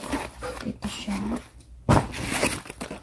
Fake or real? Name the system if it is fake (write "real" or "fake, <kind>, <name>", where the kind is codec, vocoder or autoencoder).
real